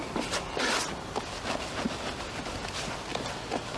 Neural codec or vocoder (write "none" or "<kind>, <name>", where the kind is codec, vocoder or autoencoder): none